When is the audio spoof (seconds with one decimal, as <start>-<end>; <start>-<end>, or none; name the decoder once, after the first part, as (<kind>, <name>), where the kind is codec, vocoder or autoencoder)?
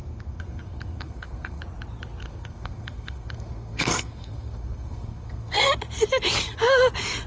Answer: 0.0-1.6 (codec, SNAC); 2.2-5.7